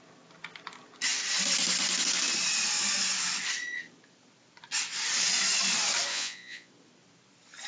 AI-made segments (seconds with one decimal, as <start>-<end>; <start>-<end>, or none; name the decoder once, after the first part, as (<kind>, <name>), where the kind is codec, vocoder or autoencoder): 6.1-6.7 (vocoder, Vocos)

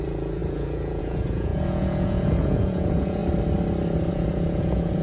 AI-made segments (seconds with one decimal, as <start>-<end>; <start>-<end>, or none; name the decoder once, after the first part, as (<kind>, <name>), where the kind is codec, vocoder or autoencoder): 0.0-3.2 (vocoder, Vocos); 4.1-5.0

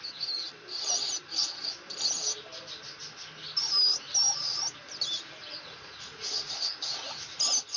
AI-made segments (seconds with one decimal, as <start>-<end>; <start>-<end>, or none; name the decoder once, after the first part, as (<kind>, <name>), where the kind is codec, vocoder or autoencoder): 5.4-6.5 (vocoder, Vocos)

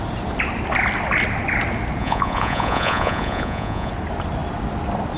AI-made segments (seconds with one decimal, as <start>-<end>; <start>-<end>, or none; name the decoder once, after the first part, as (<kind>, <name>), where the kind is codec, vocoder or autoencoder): 2.0-3.9 (vocoder, Vocos)

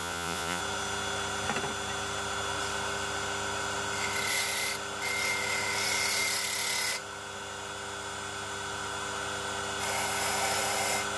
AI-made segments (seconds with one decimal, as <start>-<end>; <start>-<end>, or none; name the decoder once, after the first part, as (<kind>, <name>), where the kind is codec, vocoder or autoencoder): 0.0-0.6 (vocoder, Vocos)

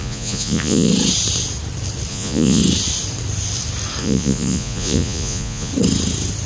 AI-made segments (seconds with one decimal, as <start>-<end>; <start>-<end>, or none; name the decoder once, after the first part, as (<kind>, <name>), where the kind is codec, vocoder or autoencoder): 0.0-0.9 (vocoder, Vocos); 2.1-2.6; 4.0-5.7